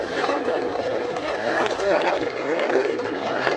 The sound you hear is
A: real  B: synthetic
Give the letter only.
B